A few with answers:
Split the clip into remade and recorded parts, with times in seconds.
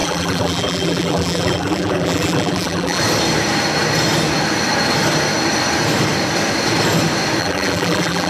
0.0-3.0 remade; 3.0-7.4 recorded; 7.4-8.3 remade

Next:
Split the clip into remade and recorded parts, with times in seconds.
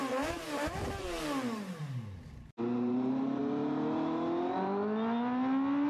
0.0-1.8 remade; 1.8-2.7 recorded; 2.7-3.4 remade; 3.4-5.9 recorded